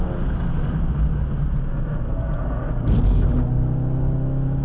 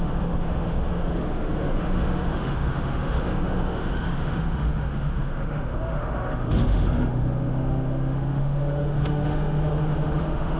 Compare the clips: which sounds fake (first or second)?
second